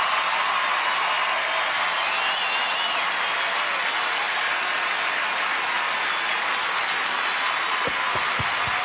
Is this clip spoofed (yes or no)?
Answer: no